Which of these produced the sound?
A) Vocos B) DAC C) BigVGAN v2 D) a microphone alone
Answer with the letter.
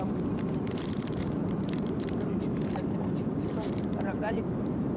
C